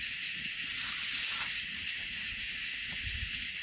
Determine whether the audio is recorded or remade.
recorded